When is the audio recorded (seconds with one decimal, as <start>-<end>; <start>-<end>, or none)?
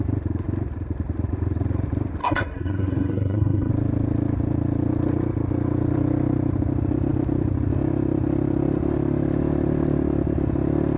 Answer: 0.0-2.2; 3.7-11.0